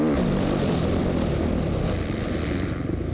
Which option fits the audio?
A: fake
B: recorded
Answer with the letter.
B